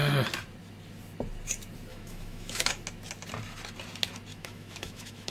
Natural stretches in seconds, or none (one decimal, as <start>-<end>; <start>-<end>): 0.0-1.9; 2.7-4.3